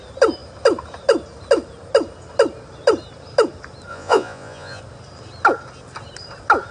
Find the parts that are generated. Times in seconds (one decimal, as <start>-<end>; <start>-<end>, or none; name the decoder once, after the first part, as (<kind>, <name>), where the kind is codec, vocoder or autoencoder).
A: 3.9-4.8 (vocoder, Vocos)